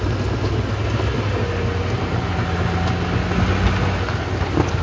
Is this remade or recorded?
recorded